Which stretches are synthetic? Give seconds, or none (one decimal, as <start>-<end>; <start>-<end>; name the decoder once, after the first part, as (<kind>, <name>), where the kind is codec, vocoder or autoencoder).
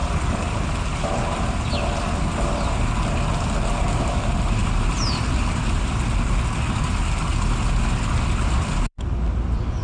4.6-5.8 (vocoder, BigVGAN v2)